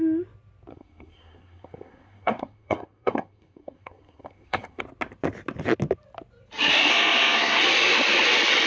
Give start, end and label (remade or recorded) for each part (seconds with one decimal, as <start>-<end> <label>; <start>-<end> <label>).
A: 0.0-0.7 recorded; 0.7-4.8 remade; 4.8-6.9 recorded; 6.9-7.6 remade; 7.6-8.7 recorded